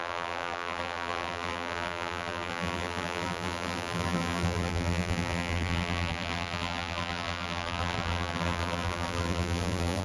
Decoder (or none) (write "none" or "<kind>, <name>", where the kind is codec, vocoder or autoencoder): vocoder, BigVGAN v2